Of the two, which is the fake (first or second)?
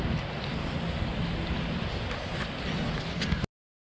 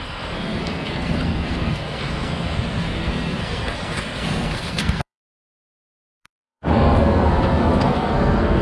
second